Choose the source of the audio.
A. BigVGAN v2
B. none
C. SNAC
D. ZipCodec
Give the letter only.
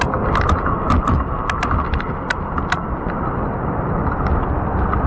B